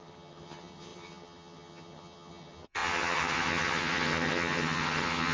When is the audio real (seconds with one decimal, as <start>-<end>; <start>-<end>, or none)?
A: none